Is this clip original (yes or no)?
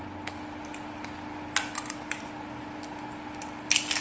yes